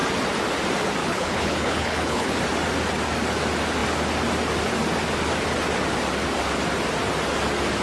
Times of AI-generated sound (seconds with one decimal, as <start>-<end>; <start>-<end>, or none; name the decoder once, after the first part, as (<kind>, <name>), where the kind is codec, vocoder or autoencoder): 1.0-2.4 (codec, HILCodec)

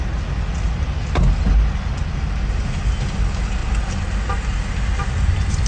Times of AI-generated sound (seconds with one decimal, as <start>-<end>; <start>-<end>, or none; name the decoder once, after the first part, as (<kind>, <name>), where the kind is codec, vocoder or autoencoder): none

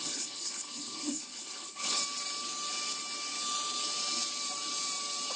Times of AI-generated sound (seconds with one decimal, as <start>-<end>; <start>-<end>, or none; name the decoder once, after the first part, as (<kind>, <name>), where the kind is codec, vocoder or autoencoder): 0.0-2.0 (codec, HILCodec)